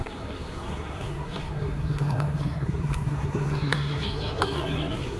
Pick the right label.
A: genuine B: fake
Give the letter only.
B